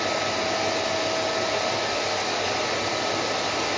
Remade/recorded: recorded